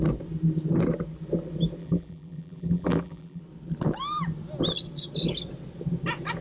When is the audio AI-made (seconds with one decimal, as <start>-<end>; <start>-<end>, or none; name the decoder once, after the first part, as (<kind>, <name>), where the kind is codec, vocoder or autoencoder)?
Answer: 1.8-3.4 (vocoder, BigVGAN v2)